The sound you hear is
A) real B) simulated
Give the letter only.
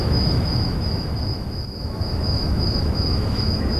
B